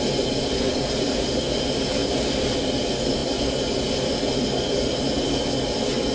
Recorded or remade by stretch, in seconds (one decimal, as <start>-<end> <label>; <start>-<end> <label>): 0.0-6.1 recorded